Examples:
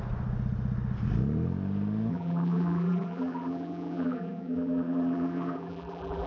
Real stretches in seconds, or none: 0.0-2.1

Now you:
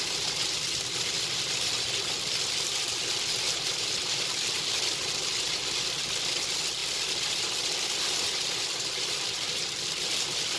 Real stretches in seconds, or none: 0.0-10.6